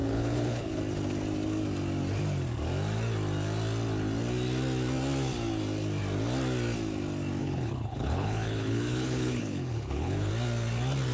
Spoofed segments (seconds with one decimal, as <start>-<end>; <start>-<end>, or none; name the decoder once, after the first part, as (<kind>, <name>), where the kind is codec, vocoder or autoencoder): 0.0-0.8 (codec, HILCodec); 7.4-10.3